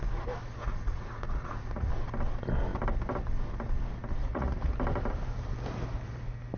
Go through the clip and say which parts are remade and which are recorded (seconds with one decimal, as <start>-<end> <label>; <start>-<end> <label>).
0.0-0.6 recorded; 0.6-1.9 remade; 1.9-4.2 recorded; 4.2-4.7 remade; 4.7-6.6 recorded